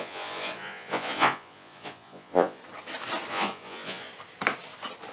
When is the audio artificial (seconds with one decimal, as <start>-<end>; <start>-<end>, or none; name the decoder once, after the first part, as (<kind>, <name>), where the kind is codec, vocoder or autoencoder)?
0.0-2.6 (vocoder, Vocos); 3.3-4.1